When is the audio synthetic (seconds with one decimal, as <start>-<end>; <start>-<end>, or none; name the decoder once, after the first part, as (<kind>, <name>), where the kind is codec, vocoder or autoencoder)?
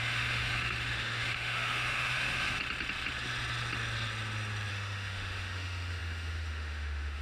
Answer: 0.0-2.6 (autoencoder, DAC-VAE); 4.7-7.2